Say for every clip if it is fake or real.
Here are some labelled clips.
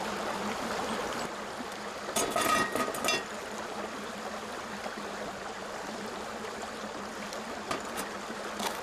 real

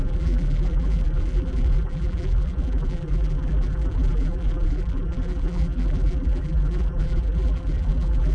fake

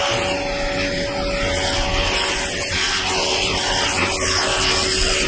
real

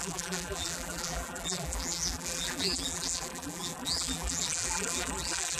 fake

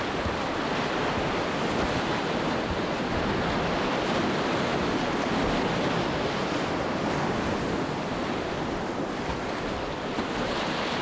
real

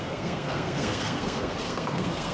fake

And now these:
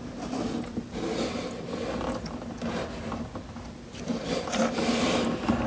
real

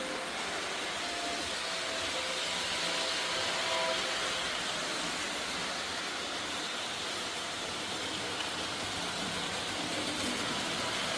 real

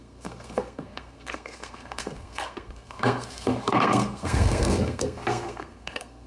fake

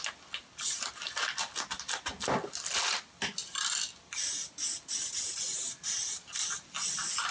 real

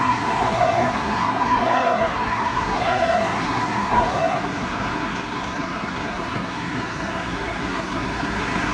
fake